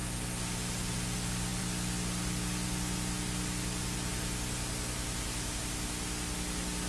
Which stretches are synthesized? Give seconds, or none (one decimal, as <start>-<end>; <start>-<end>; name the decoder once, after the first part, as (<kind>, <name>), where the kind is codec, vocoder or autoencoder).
none